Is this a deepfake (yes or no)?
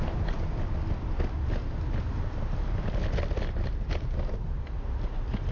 no